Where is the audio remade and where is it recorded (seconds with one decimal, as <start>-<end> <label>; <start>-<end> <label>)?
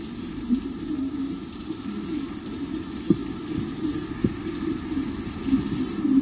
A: 0.0-6.2 remade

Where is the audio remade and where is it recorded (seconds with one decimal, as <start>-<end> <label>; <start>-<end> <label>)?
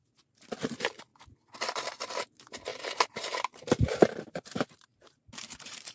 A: 0.0-0.6 recorded; 0.6-1.1 remade; 1.1-1.9 recorded; 1.9-5.9 remade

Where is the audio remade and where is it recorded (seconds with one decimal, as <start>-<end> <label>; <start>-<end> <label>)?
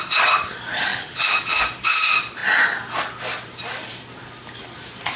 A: 0.0-0.9 recorded; 0.9-1.6 remade; 1.6-5.2 recorded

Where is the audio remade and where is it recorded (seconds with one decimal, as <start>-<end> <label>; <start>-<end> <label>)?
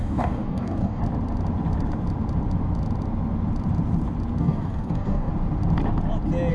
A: 0.0-1.0 remade; 1.0-4.4 recorded; 4.4-5.3 remade; 5.3-6.5 recorded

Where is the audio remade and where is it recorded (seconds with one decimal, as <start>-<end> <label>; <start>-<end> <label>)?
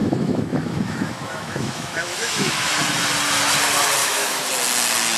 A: 0.0-2.7 remade; 2.7-4.0 recorded; 4.0-4.5 remade; 4.5-5.2 recorded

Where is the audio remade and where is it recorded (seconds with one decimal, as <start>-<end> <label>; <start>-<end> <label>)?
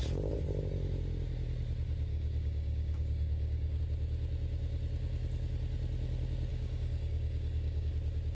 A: 0.0-2.1 recorded; 2.1-3.8 remade; 3.8-6.5 recorded; 6.5-7.9 remade; 7.9-8.3 recorded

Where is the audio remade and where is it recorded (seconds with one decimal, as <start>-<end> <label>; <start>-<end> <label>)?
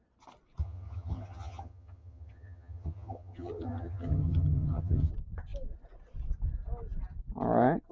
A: 0.0-0.6 recorded; 0.6-5.1 remade; 5.1-7.9 recorded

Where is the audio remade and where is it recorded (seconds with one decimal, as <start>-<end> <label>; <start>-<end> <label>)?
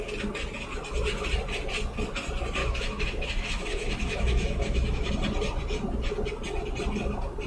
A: 0.0-2.6 recorded; 2.6-5.1 remade; 5.1-7.5 recorded